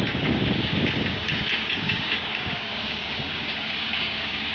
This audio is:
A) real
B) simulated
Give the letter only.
B